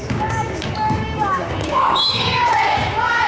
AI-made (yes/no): yes